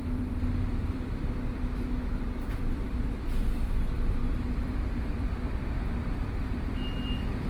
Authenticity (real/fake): fake